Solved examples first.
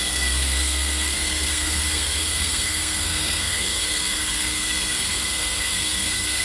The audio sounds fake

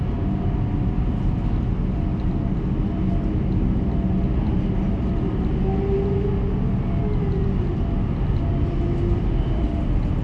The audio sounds real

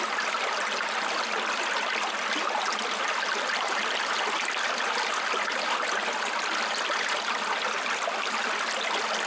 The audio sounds real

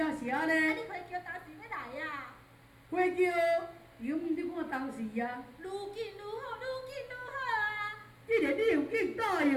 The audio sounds real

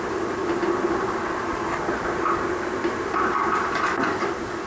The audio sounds real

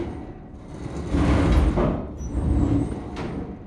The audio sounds real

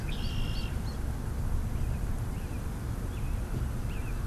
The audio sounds real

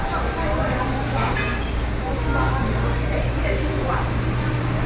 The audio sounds real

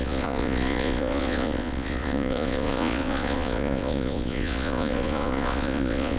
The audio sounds fake